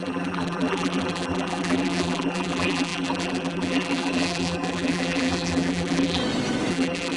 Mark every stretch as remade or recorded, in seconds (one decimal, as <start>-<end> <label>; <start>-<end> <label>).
0.0-6.2 remade; 6.2-6.7 recorded; 6.7-7.2 remade